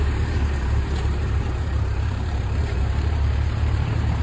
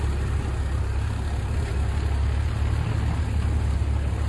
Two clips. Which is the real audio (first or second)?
second